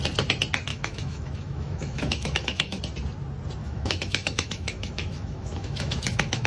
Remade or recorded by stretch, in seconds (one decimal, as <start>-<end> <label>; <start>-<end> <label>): 0.0-0.7 recorded; 0.7-2.8 remade; 2.8-3.6 recorded; 3.6-6.5 remade